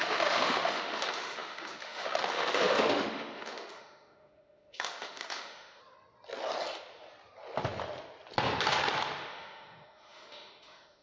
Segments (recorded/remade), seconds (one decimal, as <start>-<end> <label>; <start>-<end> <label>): 0.0-5.8 remade; 5.8-9.3 recorded; 9.3-11.0 remade